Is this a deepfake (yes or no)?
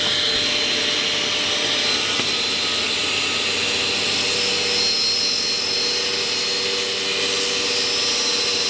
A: no